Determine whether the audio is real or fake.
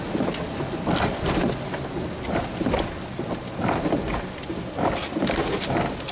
real